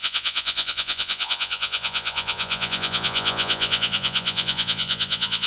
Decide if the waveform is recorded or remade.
remade